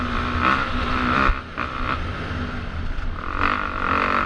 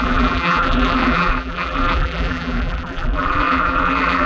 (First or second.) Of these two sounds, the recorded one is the first